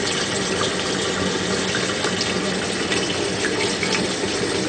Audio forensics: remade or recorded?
recorded